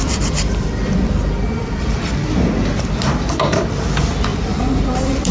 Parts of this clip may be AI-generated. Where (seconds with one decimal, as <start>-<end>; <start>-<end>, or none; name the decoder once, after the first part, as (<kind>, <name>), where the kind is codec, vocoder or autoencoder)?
0.0-2.0 (vocoder, BigVGAN v2); 4.3-5.3